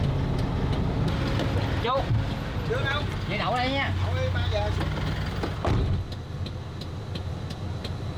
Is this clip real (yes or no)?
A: yes